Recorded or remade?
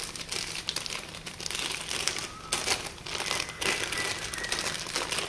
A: recorded